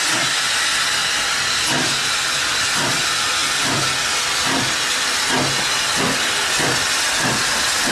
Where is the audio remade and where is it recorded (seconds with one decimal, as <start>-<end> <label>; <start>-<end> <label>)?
0.0-7.9 recorded